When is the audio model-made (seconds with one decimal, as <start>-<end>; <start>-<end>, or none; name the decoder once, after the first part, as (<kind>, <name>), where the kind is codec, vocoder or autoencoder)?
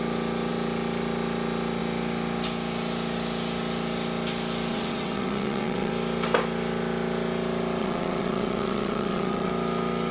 4.7-5.9 (vocoder, WaveNeXt); 7.8-9.5